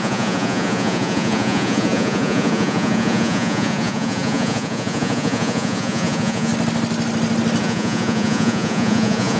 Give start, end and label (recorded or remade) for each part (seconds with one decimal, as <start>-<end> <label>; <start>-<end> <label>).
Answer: 0.0-6.5 remade; 6.5-7.6 recorded; 7.6-9.4 remade